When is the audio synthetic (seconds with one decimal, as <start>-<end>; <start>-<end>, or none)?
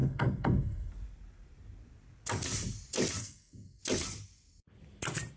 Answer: 0.0-0.9; 3.2-3.8